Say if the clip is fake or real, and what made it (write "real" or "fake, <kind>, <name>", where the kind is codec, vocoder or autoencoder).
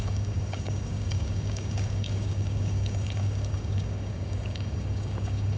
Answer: fake, codec, DAC